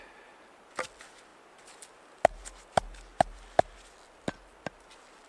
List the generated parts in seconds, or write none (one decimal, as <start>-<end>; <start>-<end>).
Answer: none